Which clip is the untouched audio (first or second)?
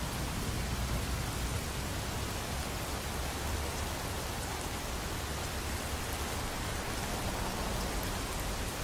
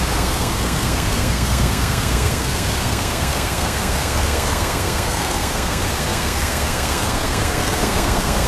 first